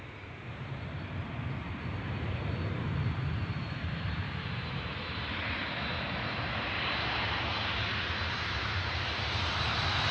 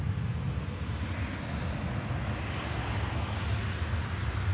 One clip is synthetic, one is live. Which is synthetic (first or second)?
first